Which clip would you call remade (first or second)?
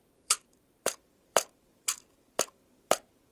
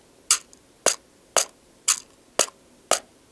first